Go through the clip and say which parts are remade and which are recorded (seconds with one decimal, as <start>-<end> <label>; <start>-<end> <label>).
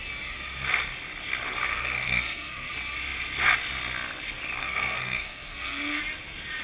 0.0-1.7 recorded; 1.7-2.7 remade; 2.7-4.6 recorded; 4.6-6.0 remade; 6.0-6.6 recorded